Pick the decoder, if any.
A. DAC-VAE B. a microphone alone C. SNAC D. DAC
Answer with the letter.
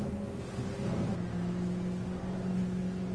B